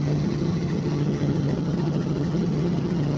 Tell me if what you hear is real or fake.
fake